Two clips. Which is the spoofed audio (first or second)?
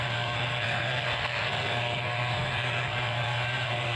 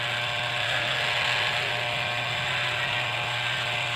first